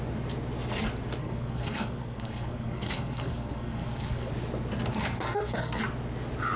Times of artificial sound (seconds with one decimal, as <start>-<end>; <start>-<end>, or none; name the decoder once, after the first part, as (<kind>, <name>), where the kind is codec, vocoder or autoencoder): 1.2-4.3 (codec, SNAC); 4.9-5.8